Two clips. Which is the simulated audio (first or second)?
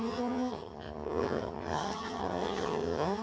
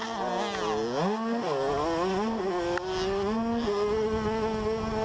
first